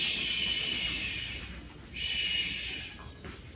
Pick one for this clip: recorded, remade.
recorded